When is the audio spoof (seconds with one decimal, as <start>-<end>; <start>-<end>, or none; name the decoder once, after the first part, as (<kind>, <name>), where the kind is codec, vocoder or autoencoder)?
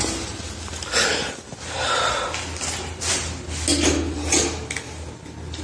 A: none